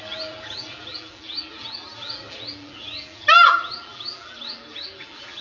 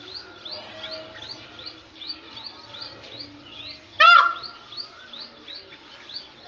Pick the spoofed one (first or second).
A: first